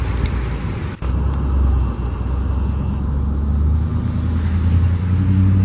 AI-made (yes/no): no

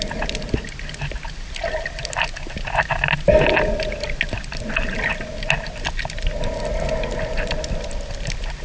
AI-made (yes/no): no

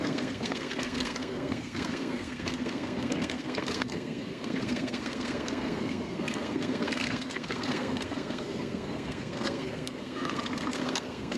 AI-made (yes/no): yes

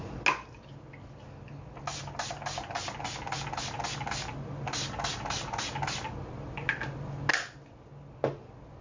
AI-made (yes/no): no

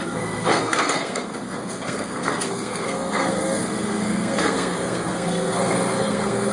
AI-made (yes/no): yes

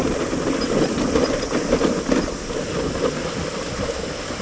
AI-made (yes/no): no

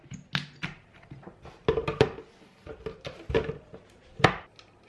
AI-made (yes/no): no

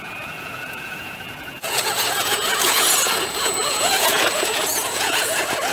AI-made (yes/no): yes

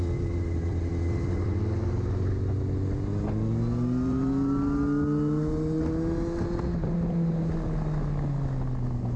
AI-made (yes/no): no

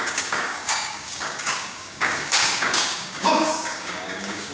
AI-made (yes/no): yes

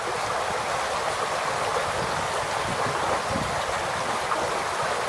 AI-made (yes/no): no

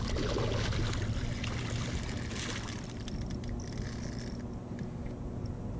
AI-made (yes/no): no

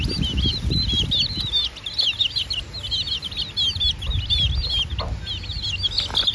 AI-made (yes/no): no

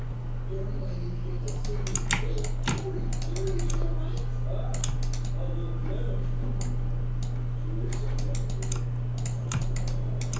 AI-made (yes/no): no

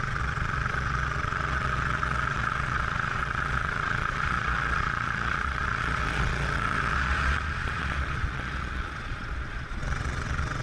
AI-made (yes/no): yes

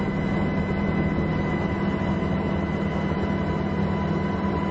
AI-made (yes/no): no